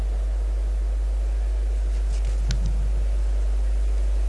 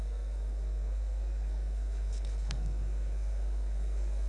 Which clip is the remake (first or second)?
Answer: second